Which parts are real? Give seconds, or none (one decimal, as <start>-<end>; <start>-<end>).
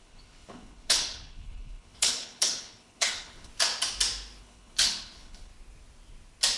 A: 3.5-4.4; 5.5-6.6